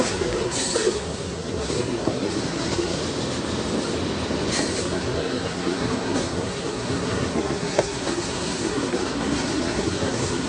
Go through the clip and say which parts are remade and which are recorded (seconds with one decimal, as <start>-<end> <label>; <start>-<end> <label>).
0.0-3.0 remade; 3.0-4.8 recorded; 4.8-10.5 remade